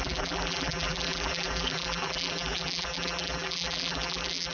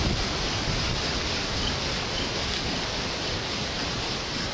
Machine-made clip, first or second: first